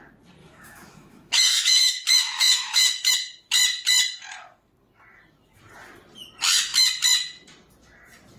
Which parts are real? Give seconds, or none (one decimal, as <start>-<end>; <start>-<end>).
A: 0.0-0.4; 3.1-8.4